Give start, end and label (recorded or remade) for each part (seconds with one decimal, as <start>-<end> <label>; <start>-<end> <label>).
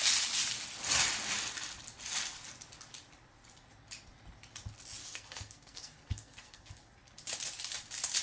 0.0-5.0 recorded; 5.0-6.9 remade; 6.9-8.2 recorded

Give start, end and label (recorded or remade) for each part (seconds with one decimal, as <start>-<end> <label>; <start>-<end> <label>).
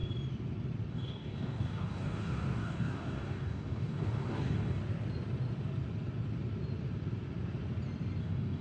0.0-0.9 recorded; 0.9-4.8 remade; 4.8-8.2 recorded; 8.2-8.6 remade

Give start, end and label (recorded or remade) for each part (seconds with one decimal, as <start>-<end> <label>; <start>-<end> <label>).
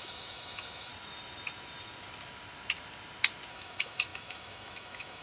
0.0-0.9 remade; 0.9-3.5 recorded; 3.5-5.2 remade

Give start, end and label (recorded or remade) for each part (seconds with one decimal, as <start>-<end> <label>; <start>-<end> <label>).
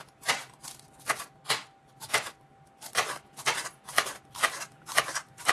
0.0-5.5 recorded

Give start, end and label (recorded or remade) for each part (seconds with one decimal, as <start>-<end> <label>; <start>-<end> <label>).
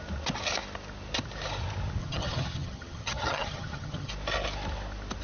0.0-2.0 recorded; 2.0-4.1 remade; 4.1-5.2 recorded